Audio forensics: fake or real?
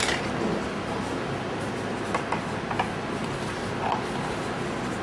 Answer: real